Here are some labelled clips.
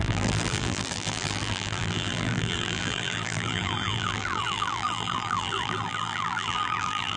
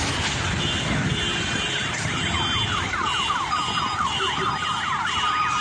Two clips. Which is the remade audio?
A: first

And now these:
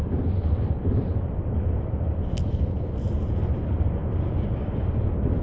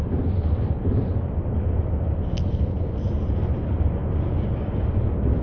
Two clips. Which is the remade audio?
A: first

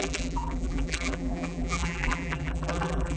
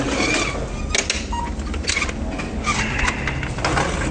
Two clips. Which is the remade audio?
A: first